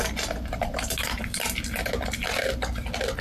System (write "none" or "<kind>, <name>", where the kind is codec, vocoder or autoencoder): none